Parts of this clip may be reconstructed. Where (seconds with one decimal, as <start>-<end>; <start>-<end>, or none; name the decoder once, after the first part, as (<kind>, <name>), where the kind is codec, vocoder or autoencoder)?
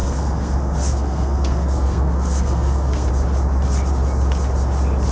0.0-3.1 (codec, SNAC)